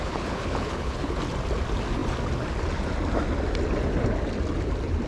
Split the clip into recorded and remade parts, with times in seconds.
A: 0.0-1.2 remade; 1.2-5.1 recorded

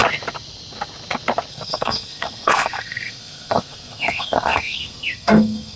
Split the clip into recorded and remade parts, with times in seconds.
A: 0.0-1.5 recorded; 1.5-5.8 remade

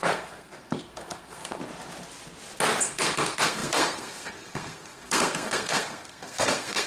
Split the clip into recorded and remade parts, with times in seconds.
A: 0.0-1.6 remade; 1.6-2.8 recorded; 2.8-6.9 remade

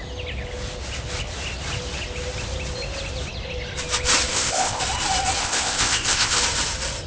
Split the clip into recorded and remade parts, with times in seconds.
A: 0.0-4.3 recorded; 4.3-4.8 remade; 4.8-5.4 recorded; 5.4-6.4 remade; 6.4-7.1 recorded

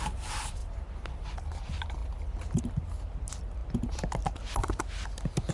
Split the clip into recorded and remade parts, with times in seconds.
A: 0.0-5.5 recorded

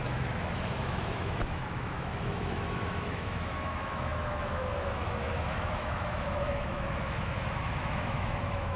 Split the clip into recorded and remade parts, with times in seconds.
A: 0.0-8.8 remade

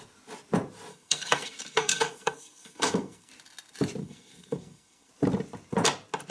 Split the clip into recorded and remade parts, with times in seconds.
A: 0.0-0.9 recorded; 0.9-3.3 remade; 3.3-4.0 recorded; 4.0-5.1 remade; 5.1-6.3 recorded

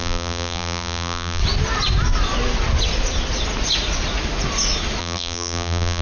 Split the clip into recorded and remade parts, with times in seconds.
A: 0.0-1.4 remade; 1.4-5.0 recorded; 5.0-6.0 remade